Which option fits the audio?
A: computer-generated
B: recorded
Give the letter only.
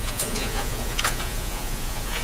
A